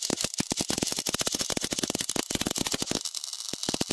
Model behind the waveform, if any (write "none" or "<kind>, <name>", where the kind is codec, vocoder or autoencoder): none